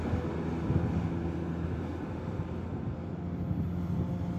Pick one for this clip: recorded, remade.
recorded